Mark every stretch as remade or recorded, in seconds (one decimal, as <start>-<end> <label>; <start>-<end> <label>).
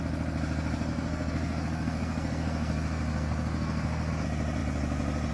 0.0-0.9 recorded; 0.9-4.1 remade; 4.1-5.3 recorded